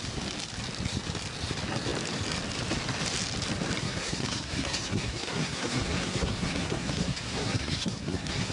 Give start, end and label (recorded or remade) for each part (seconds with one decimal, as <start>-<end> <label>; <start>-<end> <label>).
0.0-3.8 recorded; 3.8-8.5 remade